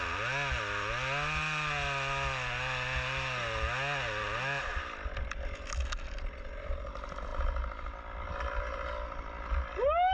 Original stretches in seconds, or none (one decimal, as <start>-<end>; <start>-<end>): 0.0-10.1